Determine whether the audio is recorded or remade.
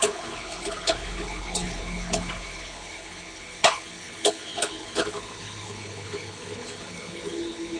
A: remade